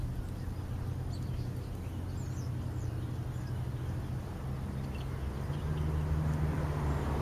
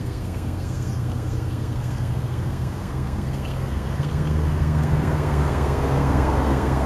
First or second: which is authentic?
first